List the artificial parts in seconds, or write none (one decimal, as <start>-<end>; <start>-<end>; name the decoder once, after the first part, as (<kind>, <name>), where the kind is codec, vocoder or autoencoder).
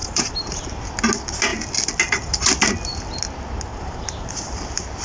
0.0-0.7 (vocoder, BigVGAN v2); 3.7-4.3